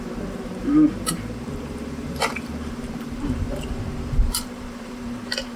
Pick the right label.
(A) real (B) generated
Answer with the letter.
B